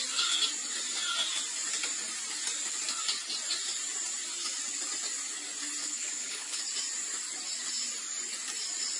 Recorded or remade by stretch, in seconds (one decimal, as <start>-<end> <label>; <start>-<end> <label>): 0.0-5.8 recorded; 5.8-6.6 remade; 6.6-9.0 recorded

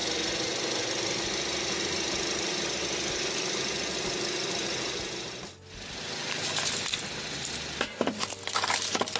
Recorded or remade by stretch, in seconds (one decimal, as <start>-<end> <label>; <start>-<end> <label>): 0.0-9.2 recorded

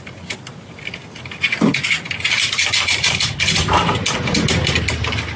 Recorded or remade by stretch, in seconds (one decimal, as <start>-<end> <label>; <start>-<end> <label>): 0.0-5.4 recorded